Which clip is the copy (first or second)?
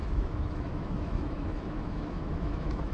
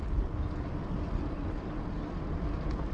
first